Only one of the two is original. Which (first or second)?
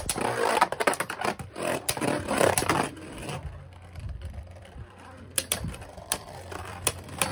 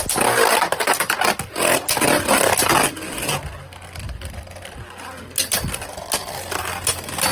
second